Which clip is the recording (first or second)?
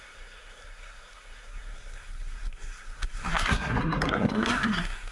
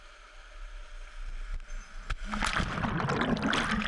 second